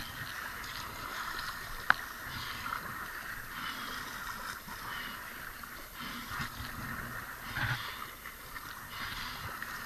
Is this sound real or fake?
real